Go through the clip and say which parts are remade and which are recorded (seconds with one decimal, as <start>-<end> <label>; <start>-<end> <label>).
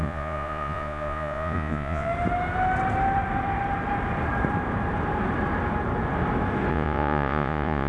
0.0-2.1 remade; 2.1-6.7 recorded; 6.7-7.9 remade